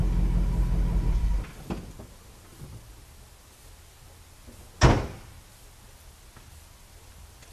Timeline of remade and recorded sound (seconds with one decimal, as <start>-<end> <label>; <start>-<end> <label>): 0.0-7.5 recorded